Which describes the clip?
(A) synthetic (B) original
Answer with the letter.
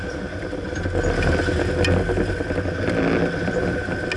B